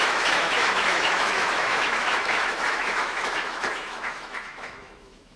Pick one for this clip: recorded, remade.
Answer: remade